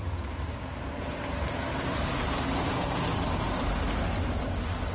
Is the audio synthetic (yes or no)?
yes